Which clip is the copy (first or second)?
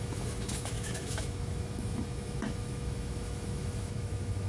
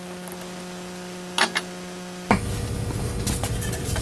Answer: first